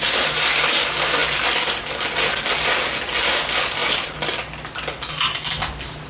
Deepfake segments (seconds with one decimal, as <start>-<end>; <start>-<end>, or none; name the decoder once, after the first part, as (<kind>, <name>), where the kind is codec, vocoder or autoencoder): none